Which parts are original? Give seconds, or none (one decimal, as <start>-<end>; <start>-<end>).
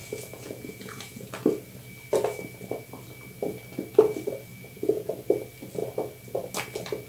1.3-4.5; 5.1-7.1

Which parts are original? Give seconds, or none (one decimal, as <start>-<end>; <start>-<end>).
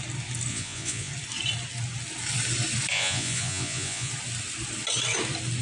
0.0-0.5; 1.1-2.9; 4.1-5.6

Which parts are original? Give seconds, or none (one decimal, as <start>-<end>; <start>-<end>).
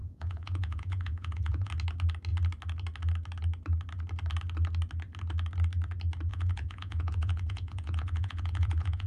1.7-6.3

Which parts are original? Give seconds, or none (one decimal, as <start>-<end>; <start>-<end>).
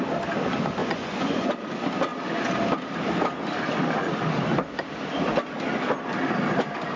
0.0-0.8; 1.5-7.0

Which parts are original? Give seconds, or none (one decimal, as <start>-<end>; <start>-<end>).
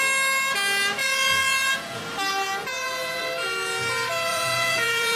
0.0-1.0; 2.0-2.6; 3.2-4.3